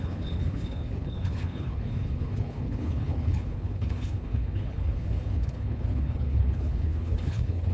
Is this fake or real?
fake